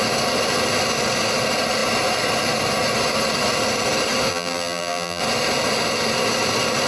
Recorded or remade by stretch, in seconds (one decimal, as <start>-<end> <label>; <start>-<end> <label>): 0.0-4.3 recorded; 4.3-5.2 remade; 5.2-6.9 recorded